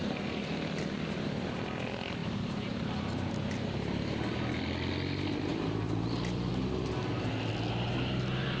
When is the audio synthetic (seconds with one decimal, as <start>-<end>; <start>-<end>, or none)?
0.0-0.5; 2.2-3.3; 5.5-6.5